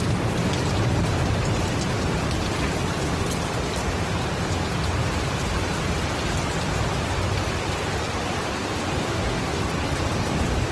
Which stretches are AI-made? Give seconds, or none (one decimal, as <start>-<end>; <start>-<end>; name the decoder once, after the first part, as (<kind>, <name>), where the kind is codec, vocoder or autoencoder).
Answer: 9.0-9.6 (codec, SNAC)

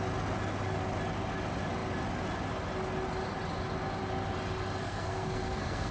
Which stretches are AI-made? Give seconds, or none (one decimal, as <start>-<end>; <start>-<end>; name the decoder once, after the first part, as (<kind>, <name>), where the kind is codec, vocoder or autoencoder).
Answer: 4.8-5.9 (codec, SNAC)

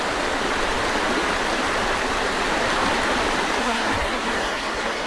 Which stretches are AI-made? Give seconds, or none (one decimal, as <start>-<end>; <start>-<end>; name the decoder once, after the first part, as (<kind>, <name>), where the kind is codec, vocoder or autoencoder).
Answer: 3.6-5.1 (codec, SNAC)

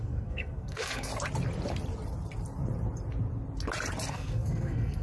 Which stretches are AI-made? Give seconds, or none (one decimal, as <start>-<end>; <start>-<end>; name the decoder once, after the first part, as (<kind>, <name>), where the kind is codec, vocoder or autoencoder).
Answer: 0.0-1.1 (codec, SNAC); 4.1-5.0

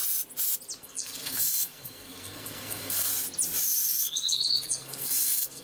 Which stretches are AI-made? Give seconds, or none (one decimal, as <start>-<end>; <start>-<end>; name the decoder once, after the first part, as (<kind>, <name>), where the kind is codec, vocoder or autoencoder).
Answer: 0.8-3.1 (codec, SNAC); 4.0-5.6

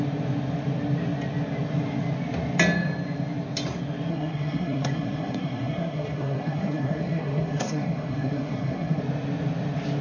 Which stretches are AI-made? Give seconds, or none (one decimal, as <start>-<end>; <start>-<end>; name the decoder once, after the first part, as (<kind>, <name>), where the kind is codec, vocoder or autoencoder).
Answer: 4.1-9.0 (codec, SNAC)

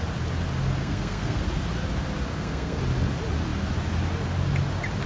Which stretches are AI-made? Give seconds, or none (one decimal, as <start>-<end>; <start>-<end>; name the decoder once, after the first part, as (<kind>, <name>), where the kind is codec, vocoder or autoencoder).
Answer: 0.8-1.4 (codec, SNAC); 2.3-2.8